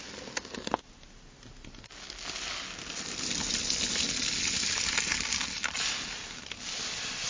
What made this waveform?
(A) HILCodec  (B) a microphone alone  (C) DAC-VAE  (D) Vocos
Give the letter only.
B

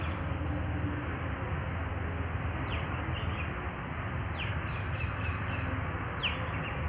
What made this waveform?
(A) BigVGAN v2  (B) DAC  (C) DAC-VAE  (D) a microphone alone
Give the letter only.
D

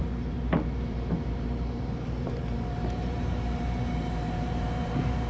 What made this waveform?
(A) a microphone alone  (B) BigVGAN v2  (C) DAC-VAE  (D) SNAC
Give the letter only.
B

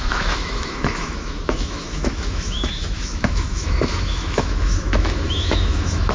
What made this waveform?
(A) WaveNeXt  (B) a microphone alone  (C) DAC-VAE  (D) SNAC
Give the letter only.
C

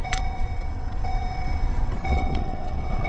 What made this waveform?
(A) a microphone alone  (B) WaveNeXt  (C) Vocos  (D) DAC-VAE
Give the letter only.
B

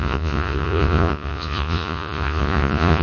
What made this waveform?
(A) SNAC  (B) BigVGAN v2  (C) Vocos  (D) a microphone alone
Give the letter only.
C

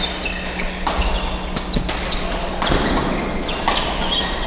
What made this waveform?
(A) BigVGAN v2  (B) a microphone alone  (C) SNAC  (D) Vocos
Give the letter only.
B